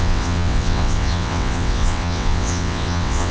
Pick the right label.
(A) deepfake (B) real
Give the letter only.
A